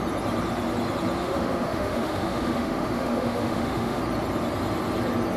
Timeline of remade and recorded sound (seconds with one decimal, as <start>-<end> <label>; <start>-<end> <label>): 0.0-1.2 recorded; 1.2-4.0 remade; 4.0-5.4 recorded